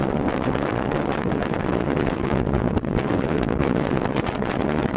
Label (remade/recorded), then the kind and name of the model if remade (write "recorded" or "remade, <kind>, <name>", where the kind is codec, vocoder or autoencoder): remade, vocoder, WaveNeXt